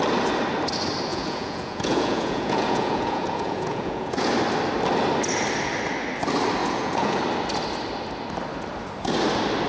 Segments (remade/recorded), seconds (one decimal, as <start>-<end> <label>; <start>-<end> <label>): 0.0-1.1 recorded; 1.1-4.3 remade; 4.3-6.6 recorded; 6.6-7.2 remade; 7.2-9.7 recorded